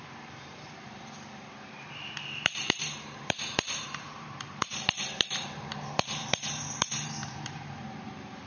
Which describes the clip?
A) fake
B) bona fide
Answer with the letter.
A